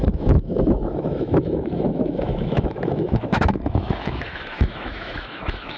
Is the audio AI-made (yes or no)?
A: yes